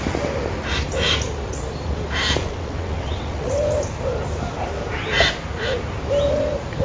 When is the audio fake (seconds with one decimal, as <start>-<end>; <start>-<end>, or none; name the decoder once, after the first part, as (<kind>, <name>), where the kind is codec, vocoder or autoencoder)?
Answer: 2.4-3.5 (vocoder, WaveNeXt)